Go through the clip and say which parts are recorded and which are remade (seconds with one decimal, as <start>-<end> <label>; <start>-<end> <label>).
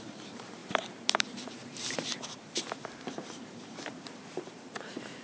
0.0-5.2 remade